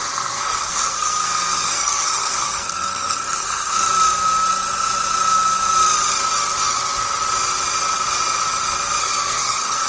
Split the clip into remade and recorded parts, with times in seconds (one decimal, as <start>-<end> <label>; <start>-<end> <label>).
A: 0.0-3.8 remade; 3.8-9.0 recorded; 9.0-9.9 remade